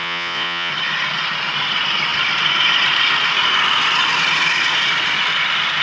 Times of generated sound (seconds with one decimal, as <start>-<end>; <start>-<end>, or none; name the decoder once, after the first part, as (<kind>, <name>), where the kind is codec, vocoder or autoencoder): 0.0-0.7 (vocoder, Vocos)